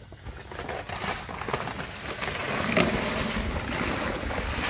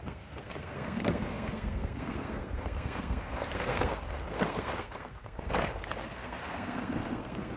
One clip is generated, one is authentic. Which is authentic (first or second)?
first